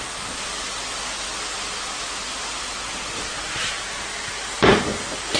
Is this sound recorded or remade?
recorded